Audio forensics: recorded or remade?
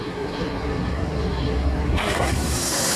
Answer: remade